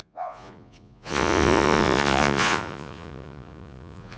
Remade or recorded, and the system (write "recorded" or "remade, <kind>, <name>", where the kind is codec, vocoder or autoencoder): remade, vocoder, Vocos